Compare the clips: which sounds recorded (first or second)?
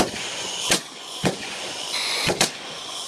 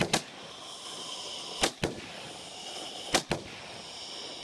second